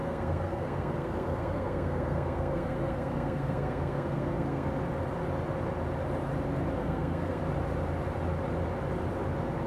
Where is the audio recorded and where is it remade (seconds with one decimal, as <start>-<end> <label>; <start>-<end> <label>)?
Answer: 0.0-4.7 remade; 4.7-6.8 recorded; 6.8-7.4 remade; 7.4-9.7 recorded